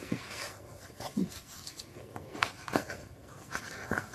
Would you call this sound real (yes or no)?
no